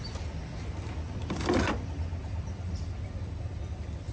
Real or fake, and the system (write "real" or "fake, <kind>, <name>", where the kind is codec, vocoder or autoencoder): real